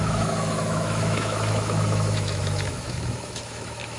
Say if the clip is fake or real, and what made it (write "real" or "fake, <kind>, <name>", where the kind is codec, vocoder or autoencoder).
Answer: fake, autoencoder, DAC-VAE